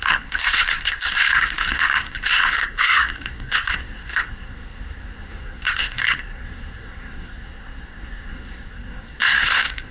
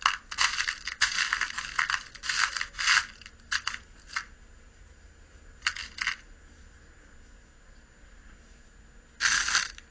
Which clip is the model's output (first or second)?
first